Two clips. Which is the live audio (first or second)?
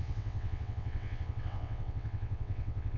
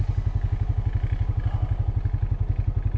second